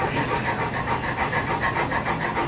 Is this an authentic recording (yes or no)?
yes